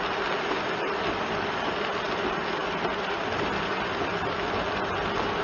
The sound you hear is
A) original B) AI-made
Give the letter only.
A